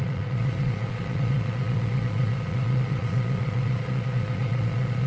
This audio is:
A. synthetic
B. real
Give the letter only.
A